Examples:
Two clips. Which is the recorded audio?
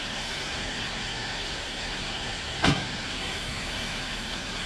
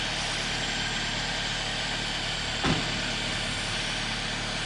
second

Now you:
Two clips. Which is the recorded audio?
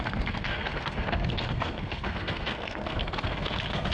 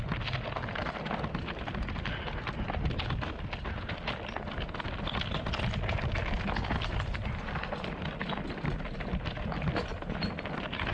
second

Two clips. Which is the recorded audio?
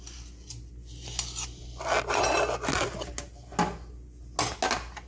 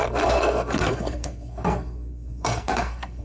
first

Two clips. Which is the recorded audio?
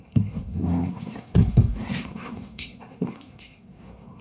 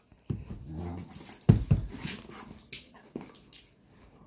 second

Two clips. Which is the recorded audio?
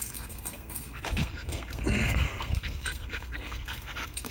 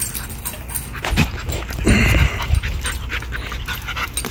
second